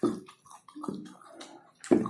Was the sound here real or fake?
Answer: real